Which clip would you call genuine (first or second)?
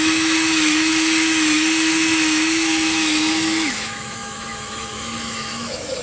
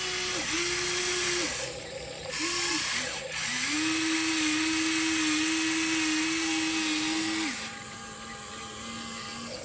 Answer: second